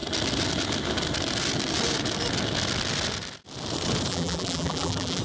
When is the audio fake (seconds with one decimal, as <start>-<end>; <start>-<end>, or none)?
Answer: 4.1-5.2